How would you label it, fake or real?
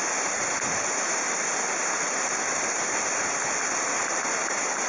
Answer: real